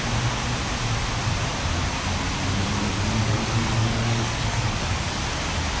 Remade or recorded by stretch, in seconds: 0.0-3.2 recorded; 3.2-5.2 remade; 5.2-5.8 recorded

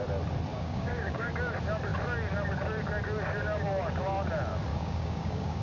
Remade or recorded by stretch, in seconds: 0.0-0.5 recorded; 0.5-1.3 remade; 1.3-4.7 recorded; 4.7-5.6 remade

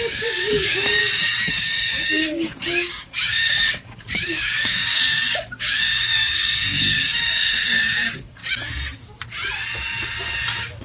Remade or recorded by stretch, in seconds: 0.0-1.0 remade; 1.0-1.5 recorded; 1.5-8.4 remade; 8.4-10.8 recorded

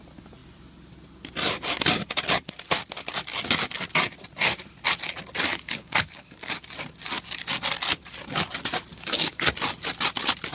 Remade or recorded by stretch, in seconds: 0.0-5.5 recorded; 5.5-6.6 remade; 6.6-8.9 recorded; 8.9-9.5 remade; 9.5-10.5 recorded

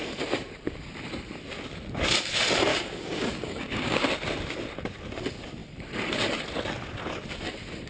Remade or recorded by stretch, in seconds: 0.0-2.7 recorded; 2.7-4.1 remade; 4.1-7.9 recorded